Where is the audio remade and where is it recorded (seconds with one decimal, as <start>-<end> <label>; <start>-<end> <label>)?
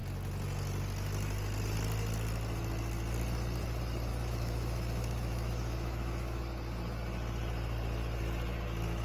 0.0-4.1 recorded; 4.1-6.4 remade; 6.4-9.0 recorded